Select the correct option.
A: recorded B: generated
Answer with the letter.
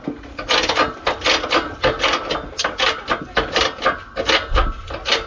A